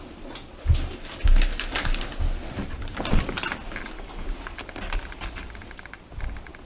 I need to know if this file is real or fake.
real